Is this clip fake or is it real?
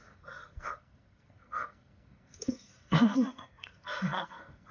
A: fake